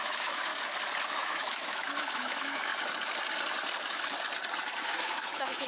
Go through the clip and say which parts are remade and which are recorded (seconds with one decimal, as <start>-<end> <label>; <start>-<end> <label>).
0.0-0.5 remade; 0.5-1.1 recorded; 1.1-2.7 remade; 2.7-4.8 recorded; 4.8-5.7 remade